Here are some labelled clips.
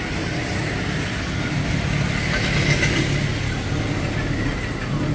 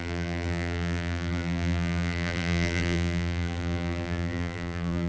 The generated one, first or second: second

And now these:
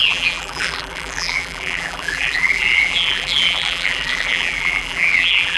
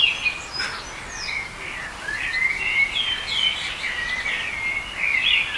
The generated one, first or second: first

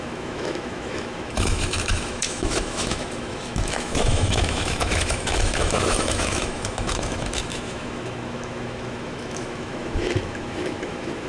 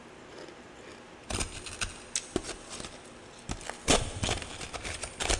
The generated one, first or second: first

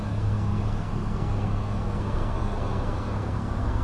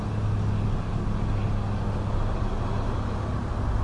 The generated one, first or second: first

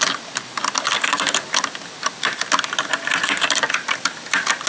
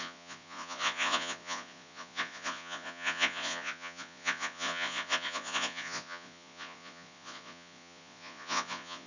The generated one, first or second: second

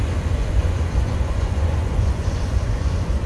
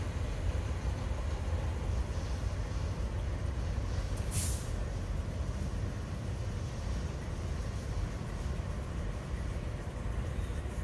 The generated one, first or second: first